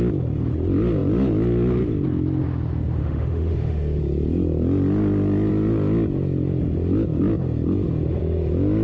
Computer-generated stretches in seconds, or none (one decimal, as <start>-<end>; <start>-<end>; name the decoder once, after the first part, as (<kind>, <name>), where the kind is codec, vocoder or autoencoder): 3.0-4.0 (autoencoder, DAC-VAE)